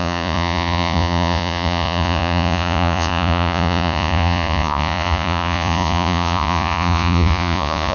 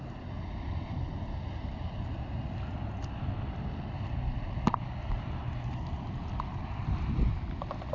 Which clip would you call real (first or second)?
second